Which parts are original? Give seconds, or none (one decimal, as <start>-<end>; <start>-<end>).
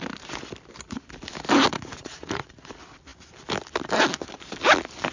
0.0-1.7; 2.7-5.1